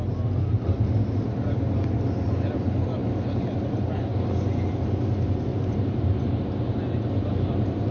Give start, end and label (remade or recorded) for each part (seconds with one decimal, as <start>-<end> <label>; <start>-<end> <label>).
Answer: 0.0-5.5 recorded; 5.5-6.4 remade; 6.4-7.9 recorded